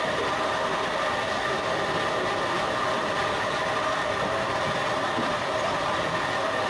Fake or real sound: real